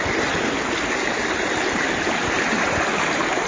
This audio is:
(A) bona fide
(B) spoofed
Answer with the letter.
A